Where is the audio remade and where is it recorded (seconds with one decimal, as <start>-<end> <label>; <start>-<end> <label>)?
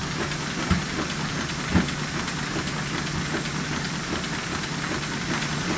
0.0-5.8 recorded